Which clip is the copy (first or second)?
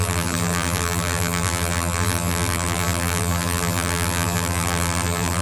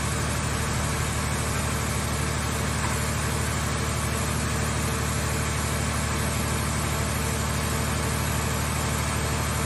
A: first